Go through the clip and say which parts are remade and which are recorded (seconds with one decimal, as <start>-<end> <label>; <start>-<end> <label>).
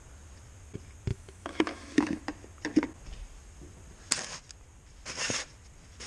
0.0-1.1 recorded; 1.1-2.2 remade; 2.2-6.1 recorded